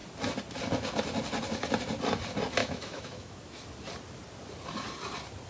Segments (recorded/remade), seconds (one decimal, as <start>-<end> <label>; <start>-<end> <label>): 0.0-2.6 recorded; 2.6-3.6 remade; 3.6-5.5 recorded